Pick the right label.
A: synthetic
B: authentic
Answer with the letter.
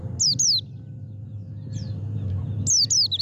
B